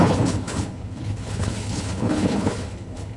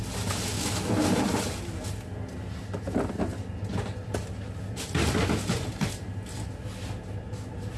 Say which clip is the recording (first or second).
second